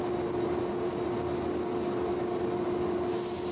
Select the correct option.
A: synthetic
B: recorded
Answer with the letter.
B